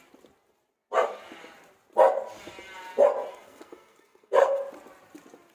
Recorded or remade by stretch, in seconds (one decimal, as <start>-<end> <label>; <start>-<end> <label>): 0.0-3.3 recorded; 3.3-4.6 remade; 4.6-5.5 recorded